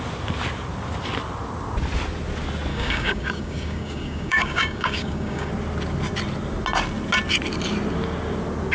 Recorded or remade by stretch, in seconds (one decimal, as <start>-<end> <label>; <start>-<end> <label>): 0.0-2.7 recorded; 2.7-5.5 remade; 5.5-8.7 recorded